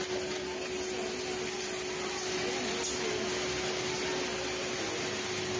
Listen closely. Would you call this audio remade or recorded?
recorded